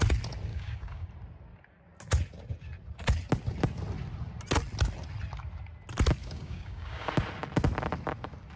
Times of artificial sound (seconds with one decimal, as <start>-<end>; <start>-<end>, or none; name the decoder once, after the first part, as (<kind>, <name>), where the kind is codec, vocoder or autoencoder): 0.5-1.1 (codec, DAC); 6.2-7.1